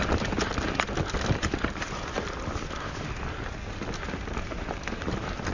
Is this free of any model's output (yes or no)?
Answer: yes